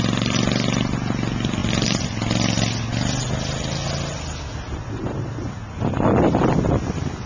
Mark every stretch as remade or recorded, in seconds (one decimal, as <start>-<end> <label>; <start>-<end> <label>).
0.0-7.3 recorded

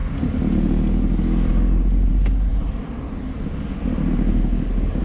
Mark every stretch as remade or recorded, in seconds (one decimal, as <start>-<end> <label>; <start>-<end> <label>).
0.0-5.0 recorded

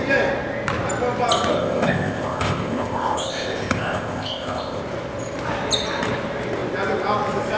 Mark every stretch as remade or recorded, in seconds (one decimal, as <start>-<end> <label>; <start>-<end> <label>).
0.0-1.5 recorded; 1.5-4.8 remade; 4.8-7.6 recorded

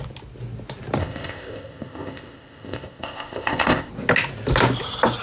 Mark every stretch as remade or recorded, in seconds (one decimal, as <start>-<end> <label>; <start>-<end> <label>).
0.0-1.0 recorded; 1.0-3.9 remade; 3.9-5.2 recorded

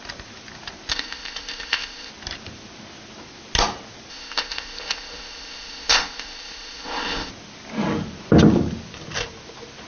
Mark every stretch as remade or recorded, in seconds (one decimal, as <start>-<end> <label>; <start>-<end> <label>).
0.0-0.9 recorded; 0.9-2.1 remade; 2.1-4.1 recorded; 4.1-7.3 remade; 7.3-9.9 recorded

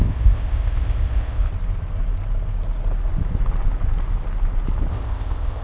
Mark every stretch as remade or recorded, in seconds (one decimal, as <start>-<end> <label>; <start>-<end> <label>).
0.0-1.5 remade; 1.5-4.9 recorded; 4.9-5.6 remade